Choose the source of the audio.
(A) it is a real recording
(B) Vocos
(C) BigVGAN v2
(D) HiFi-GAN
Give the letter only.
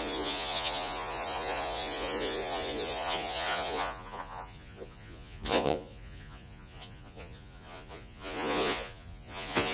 B